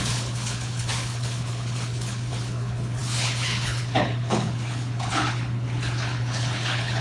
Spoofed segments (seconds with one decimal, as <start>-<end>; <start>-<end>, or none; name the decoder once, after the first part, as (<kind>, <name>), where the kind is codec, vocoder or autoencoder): 0.0-7.0 (codec, HILCodec)